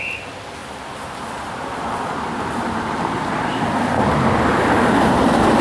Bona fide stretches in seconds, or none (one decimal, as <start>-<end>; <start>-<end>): 0.0-0.6; 4.0-4.5